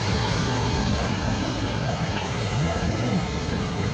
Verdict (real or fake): fake